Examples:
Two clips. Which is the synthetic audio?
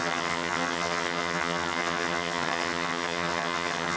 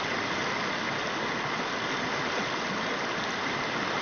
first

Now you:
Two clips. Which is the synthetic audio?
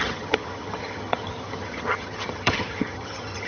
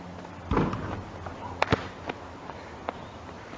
first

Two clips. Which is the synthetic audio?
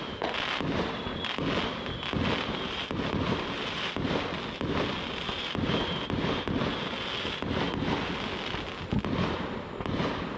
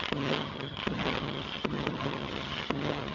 second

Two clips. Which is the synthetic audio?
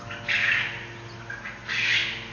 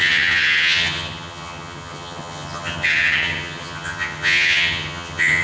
second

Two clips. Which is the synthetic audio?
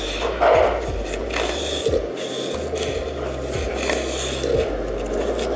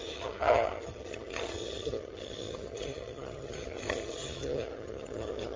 second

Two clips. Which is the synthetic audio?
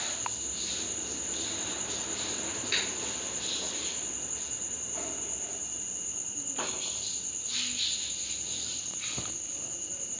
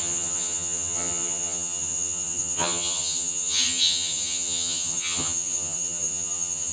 second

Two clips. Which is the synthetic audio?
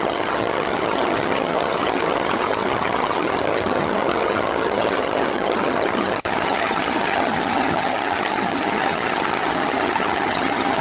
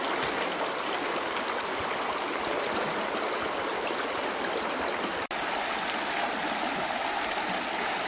first